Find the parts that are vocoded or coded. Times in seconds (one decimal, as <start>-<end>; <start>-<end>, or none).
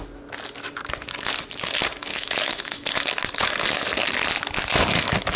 2.1-2.9